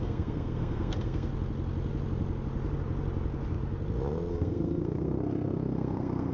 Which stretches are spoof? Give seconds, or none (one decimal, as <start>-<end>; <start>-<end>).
0.0-1.3; 4.3-6.3